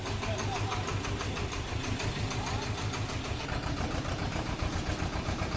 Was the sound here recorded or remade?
recorded